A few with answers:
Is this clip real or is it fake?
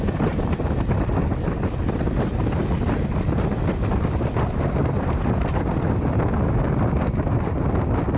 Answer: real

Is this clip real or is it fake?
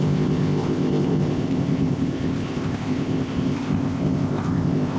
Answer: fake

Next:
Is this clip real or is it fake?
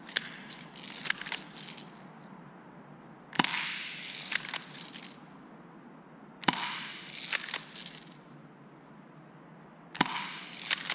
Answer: real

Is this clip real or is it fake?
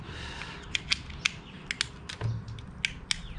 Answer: real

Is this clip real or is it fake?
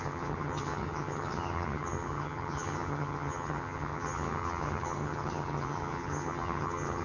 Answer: fake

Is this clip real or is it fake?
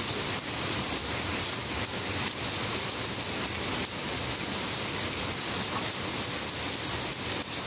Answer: real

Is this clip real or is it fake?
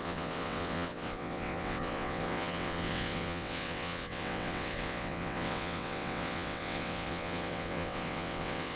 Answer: fake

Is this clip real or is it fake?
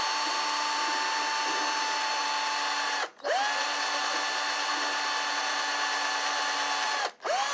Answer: real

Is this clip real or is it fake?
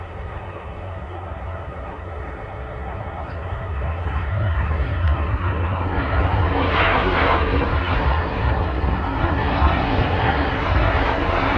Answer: fake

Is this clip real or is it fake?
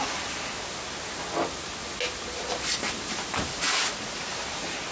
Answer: real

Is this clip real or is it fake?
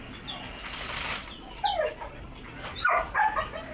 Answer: real